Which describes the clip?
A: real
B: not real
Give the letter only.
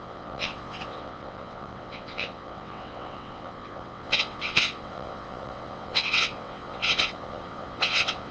B